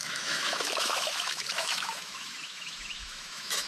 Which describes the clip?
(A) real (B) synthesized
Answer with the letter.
B